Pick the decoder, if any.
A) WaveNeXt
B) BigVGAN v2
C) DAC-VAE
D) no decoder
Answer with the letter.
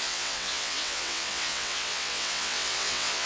A